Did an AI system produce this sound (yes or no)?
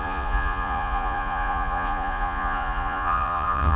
yes